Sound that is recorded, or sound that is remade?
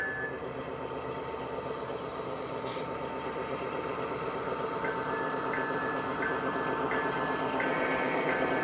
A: recorded